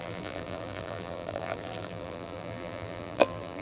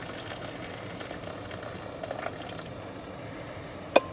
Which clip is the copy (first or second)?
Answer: first